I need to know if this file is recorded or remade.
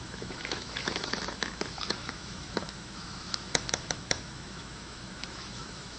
remade